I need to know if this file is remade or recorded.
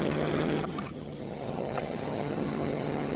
remade